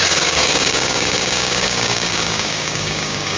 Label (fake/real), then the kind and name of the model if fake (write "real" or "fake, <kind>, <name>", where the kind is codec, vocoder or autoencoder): fake, codec, DAC